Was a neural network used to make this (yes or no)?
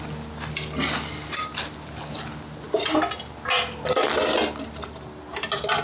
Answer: no